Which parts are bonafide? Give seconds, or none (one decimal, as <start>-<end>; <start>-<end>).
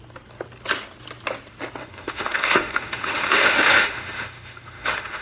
0.0-1.8